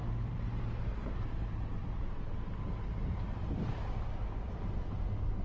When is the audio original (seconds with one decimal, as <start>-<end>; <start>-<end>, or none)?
0.6-5.4